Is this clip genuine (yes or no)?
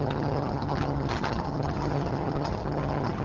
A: no